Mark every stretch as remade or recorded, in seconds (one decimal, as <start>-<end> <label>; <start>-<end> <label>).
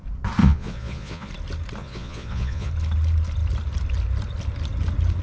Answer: 0.0-0.4 recorded; 0.4-1.3 remade; 1.3-1.8 recorded; 1.8-2.7 remade; 2.7-5.2 recorded